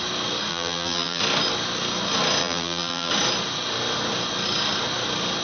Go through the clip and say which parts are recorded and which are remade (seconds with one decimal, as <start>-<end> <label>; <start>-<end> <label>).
0.0-0.5 recorded; 0.5-1.2 remade; 1.2-2.4 recorded; 2.4-3.1 remade; 3.1-5.4 recorded